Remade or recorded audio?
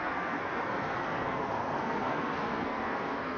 remade